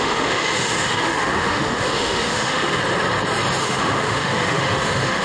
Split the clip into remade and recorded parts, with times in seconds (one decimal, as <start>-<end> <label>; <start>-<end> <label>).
0.0-2.8 remade; 2.8-3.6 recorded; 3.6-5.2 remade